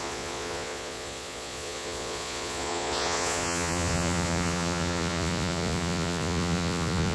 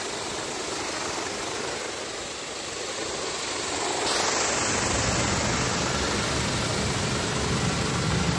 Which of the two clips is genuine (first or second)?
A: second